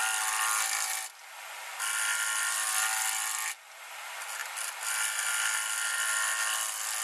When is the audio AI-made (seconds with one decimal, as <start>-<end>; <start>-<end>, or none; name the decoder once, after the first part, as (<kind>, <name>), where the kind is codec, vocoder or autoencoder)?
none